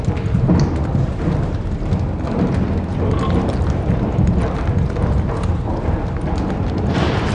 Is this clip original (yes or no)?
yes